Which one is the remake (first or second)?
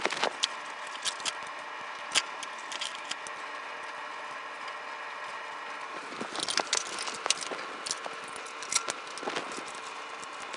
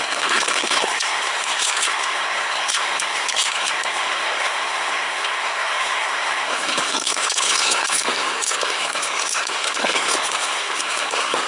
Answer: second